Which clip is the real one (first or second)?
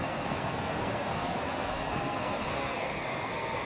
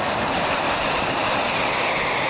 second